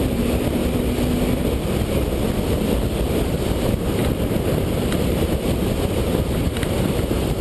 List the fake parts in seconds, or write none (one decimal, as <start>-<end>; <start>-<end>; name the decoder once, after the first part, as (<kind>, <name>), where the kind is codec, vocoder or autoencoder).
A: 0.0-0.6 (vocoder, BigVGAN v2); 3.3-4.0; 4.8-7.4